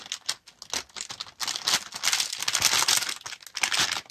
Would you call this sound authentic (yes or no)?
yes